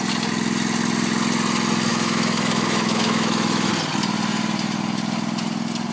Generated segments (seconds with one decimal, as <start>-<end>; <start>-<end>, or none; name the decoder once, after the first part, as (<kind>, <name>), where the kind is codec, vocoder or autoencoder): 1.9-3.7 (autoencoder, DAC-VAE)